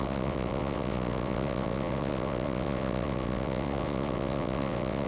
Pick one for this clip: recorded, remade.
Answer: remade